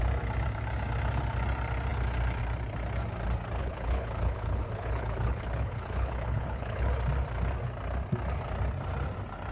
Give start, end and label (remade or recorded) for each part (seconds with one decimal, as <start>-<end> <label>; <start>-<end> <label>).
0.0-3.6 recorded; 3.6-6.9 remade; 6.9-9.5 recorded